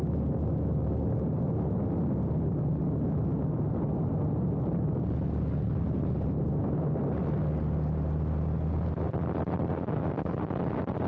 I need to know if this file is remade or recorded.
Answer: recorded